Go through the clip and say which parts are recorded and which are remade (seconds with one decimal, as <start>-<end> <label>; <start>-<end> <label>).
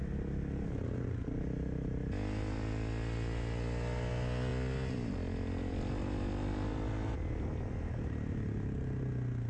0.0-9.5 recorded